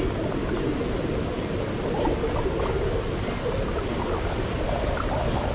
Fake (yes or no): no